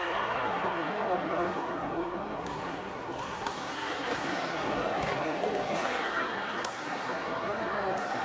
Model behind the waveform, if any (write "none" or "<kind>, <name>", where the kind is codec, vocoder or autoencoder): codec, SNAC